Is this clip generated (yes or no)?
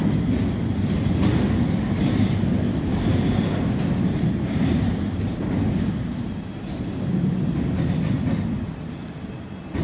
no